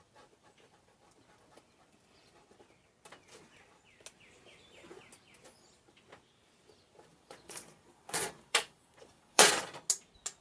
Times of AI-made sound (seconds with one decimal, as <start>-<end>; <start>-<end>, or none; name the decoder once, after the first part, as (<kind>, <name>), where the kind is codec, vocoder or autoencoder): 7.1-9.5 (vocoder, Vocos)